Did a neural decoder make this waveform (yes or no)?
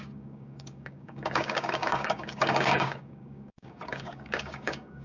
yes